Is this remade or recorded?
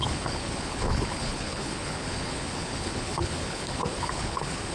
remade